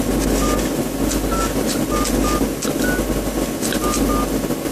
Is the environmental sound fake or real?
real